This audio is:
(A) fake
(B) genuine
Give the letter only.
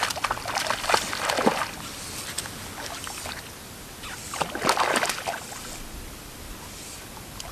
B